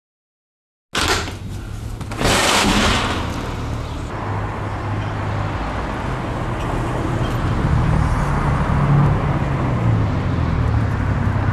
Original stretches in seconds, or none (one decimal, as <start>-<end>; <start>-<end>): 0.0-2.4; 3.0-11.5